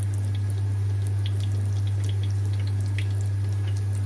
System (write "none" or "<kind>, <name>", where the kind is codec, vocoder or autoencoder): none